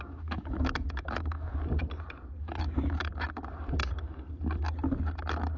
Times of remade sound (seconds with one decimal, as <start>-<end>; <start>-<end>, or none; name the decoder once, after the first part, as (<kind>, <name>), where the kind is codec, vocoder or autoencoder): 0.0-1.5 (autoencoder, DAC-VAE); 2.4-3.1

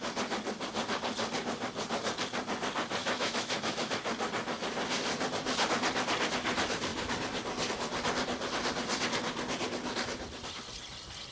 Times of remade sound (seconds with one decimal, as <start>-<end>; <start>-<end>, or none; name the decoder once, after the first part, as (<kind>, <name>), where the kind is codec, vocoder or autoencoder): 3.0-3.9 (autoencoder, DAC-VAE)